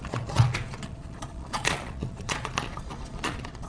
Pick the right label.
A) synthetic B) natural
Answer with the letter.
A